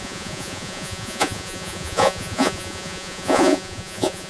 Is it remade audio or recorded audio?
remade